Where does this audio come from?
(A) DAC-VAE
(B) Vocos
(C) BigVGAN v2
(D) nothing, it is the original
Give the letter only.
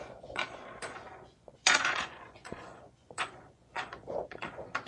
B